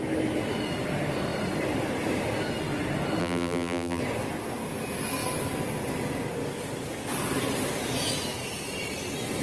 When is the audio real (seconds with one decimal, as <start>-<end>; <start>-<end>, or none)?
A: 0.0-3.2; 4.0-9.4